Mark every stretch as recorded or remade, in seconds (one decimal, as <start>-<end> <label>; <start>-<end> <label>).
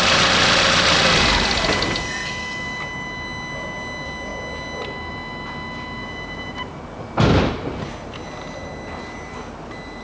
0.0-10.0 recorded